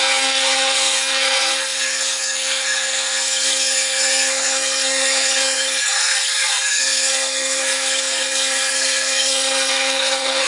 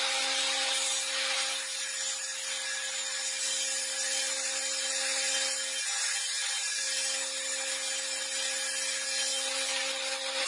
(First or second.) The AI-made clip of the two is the first